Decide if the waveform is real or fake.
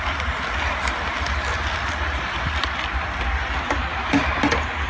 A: real